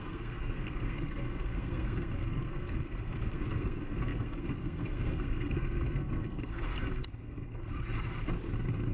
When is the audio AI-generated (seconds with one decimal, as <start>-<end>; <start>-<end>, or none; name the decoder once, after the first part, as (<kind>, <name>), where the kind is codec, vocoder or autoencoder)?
0.0-7.6 (codec, SNAC)